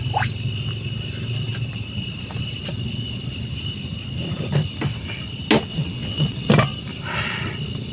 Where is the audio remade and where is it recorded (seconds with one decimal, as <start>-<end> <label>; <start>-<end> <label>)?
0.0-5.7 recorded; 5.7-6.5 remade; 6.5-7.9 recorded